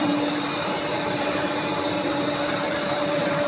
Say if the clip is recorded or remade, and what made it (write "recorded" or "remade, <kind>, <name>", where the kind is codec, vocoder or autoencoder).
remade, vocoder, BigVGAN v2